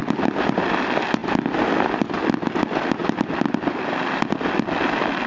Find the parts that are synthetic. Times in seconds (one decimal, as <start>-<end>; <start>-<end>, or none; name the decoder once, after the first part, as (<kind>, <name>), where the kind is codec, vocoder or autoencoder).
none